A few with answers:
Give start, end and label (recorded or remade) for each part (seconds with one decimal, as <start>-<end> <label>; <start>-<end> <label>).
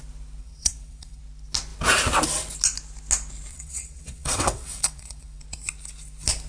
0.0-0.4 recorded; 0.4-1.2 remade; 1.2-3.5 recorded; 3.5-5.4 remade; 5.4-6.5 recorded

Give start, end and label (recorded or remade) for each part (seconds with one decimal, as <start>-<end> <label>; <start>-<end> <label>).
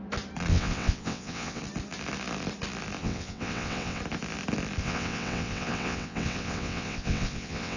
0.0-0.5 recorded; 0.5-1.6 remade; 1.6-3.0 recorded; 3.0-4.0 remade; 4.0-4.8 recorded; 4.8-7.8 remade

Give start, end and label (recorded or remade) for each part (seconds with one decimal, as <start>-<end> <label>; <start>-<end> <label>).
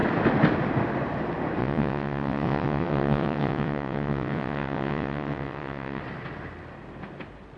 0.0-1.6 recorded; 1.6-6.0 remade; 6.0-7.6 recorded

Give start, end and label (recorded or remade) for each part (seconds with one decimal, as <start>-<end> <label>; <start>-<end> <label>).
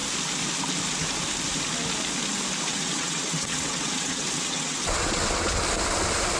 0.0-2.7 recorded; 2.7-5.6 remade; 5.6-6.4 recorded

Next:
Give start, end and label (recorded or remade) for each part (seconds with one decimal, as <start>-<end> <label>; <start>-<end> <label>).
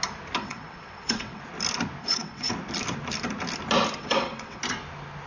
0.0-0.4 recorded; 0.4-1.4 remade; 1.4-2.0 recorded; 2.0-2.5 remade; 2.5-4.0 recorded; 4.0-4.6 remade; 4.6-5.3 recorded